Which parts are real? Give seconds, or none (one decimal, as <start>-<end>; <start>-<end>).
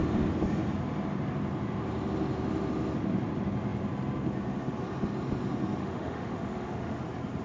0.0-5.8; 7.0-7.4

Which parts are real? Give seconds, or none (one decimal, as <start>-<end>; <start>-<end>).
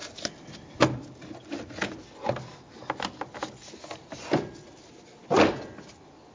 0.0-6.3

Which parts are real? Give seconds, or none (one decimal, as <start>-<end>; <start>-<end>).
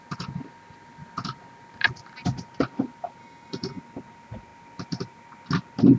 0.0-3.2; 3.8-6.0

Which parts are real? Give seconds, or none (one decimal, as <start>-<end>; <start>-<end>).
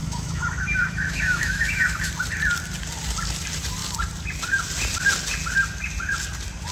2.1-6.7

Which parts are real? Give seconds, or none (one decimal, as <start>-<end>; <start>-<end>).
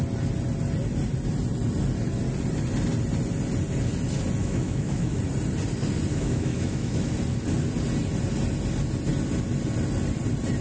0.0-4.4; 5.2-6.1; 7.1-10.6